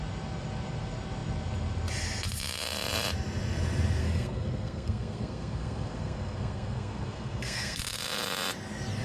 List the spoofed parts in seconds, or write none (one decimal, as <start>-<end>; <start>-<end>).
4.0-7.8